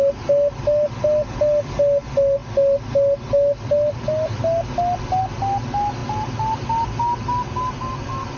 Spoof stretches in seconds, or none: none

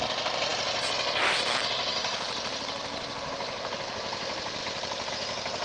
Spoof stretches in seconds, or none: 1.9-3.8 (vocoder, BigVGAN v2); 4.6-5.1

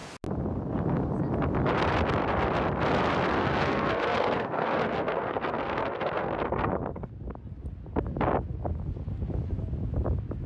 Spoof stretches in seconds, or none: 3.4-7.1 (codec, SNAC)

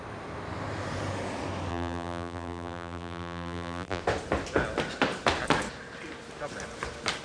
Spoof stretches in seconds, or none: 1.7-4.0 (vocoder, BigVGAN v2)